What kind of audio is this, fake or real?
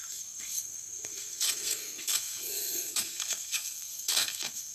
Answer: fake